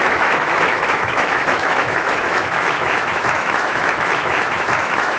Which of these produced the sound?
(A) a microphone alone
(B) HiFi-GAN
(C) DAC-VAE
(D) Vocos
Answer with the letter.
C